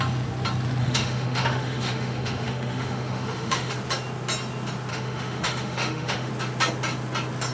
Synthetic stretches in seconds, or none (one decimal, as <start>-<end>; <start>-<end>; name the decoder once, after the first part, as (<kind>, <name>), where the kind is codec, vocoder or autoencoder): 0.8-3.7 (autoencoder, DAC-VAE); 4.9-6.3